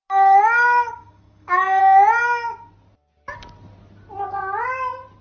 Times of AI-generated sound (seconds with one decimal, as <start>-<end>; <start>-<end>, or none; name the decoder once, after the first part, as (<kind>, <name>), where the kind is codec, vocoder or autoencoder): 0.0-1.8 (codec, DAC)